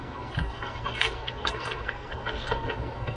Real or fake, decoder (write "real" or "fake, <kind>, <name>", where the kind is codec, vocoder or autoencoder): fake, codec, SNAC